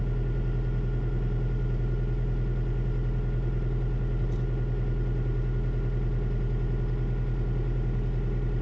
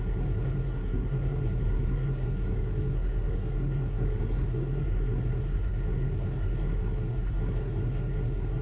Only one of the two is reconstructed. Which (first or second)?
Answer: second